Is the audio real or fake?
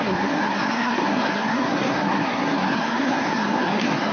fake